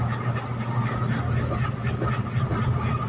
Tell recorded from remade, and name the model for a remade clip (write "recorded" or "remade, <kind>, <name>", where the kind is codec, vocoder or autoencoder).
recorded